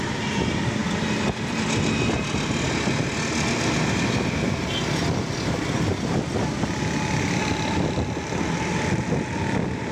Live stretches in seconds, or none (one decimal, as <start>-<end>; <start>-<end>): 0.0-9.9